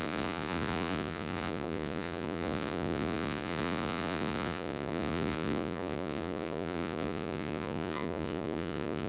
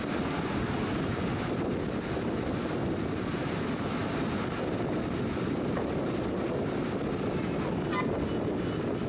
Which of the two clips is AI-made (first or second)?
first